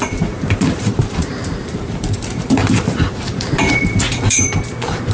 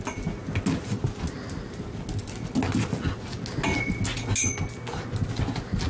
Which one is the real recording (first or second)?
second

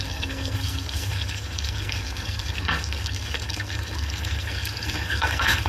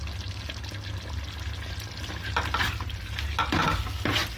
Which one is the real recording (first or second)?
second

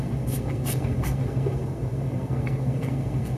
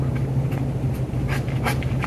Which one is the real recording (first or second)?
second